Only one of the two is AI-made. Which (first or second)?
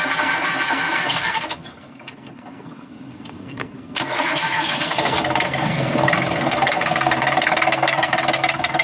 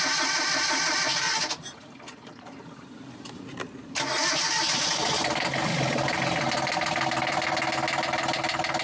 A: first